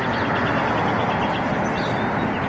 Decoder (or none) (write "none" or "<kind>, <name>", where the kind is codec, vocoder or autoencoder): none